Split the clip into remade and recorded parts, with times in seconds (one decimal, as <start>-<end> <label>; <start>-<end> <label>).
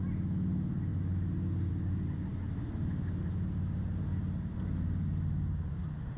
0.0-6.2 recorded